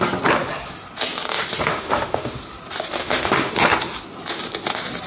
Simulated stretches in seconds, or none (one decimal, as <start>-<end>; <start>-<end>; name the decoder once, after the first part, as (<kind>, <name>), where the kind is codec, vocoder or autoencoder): 1.7-2.4 (autoencoder, DAC-VAE); 3.0-3.5